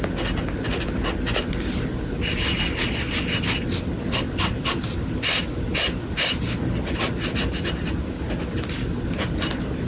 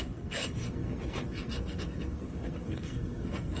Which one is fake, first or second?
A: second